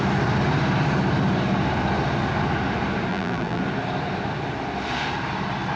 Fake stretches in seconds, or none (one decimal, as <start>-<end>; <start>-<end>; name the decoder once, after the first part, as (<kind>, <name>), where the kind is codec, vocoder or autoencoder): 3.1-3.6 (vocoder, BigVGAN v2)